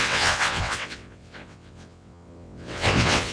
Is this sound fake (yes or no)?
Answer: yes